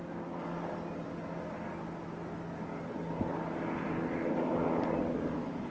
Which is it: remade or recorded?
recorded